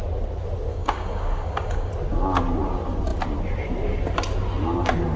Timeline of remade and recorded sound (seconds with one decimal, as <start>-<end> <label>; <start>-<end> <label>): 0.0-0.7 recorded; 0.7-1.9 remade; 1.9-5.2 recorded